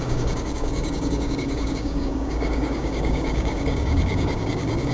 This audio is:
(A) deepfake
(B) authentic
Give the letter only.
A